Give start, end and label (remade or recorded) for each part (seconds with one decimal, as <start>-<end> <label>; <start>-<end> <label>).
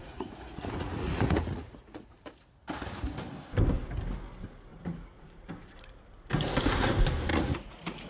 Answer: 0.0-2.2 remade; 2.2-4.7 recorded; 4.7-5.5 remade; 5.5-7.3 recorded; 7.3-8.1 remade